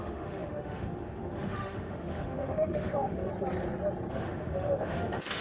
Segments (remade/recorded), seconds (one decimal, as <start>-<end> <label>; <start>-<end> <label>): 0.0-3.3 remade; 3.3-4.1 recorded; 4.1-5.4 remade